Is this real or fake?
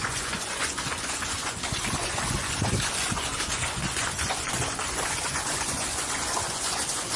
fake